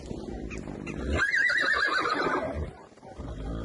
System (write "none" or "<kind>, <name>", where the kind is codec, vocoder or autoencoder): none